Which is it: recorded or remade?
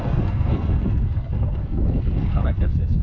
remade